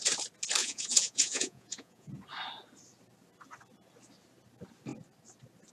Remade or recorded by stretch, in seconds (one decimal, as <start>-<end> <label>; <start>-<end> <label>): 0.0-0.6 recorded; 0.6-2.1 remade; 2.1-5.7 recorded